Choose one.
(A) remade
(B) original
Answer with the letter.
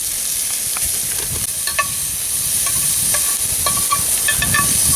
B